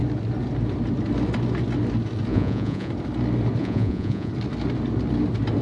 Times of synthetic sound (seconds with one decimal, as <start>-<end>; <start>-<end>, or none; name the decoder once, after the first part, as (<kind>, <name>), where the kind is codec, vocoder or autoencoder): 2.3-2.9 (vocoder, Vocos); 3.6-4.3